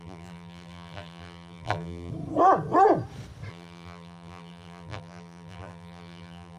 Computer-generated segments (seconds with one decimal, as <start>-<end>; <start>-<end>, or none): 0.0-2.1; 3.5-6.6